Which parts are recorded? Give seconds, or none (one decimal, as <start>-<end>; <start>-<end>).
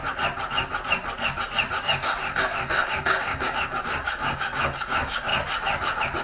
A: 0.0-1.8; 5.3-6.2